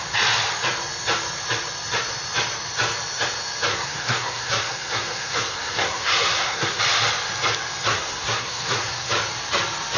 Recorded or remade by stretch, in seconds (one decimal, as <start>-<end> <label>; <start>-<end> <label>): 0.0-3.7 recorded; 3.7-6.8 remade; 6.8-7.9 recorded; 7.9-9.1 remade; 9.1-10.0 recorded